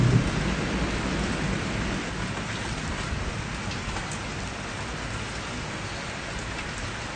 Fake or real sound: real